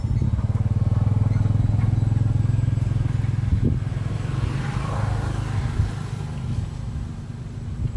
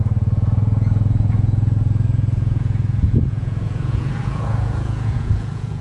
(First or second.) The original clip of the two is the first